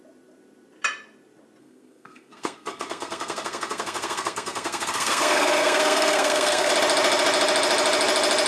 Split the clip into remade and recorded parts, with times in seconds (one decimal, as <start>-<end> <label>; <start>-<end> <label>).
0.0-1.6 recorded; 1.6-6.7 remade; 6.7-8.5 recorded